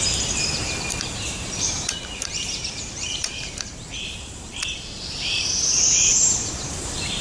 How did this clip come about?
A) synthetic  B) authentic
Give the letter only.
A